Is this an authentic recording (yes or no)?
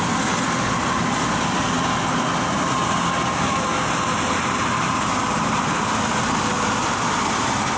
yes